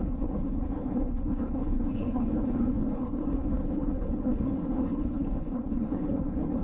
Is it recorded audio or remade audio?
remade